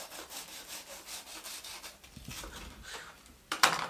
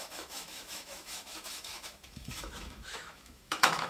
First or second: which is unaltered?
first